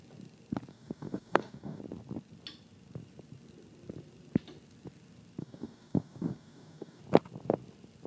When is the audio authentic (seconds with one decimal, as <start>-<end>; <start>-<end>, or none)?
0.0-0.7; 1.8-5.4; 7.0-8.1